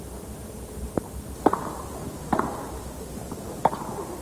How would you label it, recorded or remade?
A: recorded